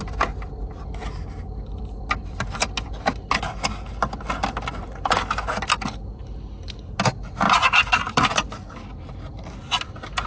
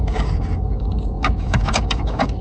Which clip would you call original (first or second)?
first